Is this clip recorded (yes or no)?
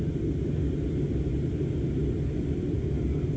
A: no